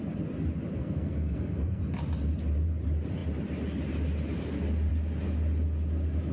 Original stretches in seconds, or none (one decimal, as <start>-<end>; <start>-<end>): 0.0-0.8; 1.8-6.3